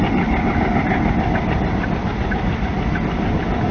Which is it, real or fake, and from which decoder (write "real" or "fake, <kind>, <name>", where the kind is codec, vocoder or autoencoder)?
real